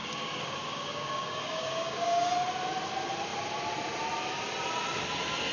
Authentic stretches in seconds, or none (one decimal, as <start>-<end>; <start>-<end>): 2.3-5.5